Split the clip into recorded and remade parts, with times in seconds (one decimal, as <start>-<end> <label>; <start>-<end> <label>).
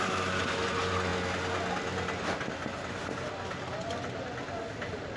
0.0-5.2 recorded